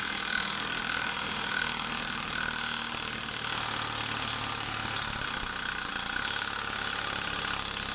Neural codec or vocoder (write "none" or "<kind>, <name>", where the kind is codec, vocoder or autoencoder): none